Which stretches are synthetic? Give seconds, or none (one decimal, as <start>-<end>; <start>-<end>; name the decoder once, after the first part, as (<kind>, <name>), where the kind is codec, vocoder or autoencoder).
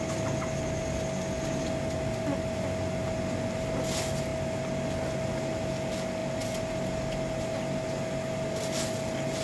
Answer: none